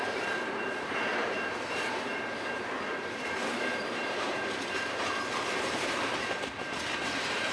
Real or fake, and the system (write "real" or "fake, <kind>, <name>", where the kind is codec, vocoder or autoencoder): fake, vocoder, BigVGAN v2